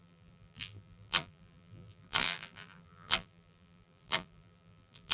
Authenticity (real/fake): fake